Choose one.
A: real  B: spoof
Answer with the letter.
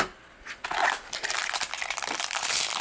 A